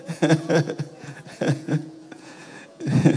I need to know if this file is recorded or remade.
remade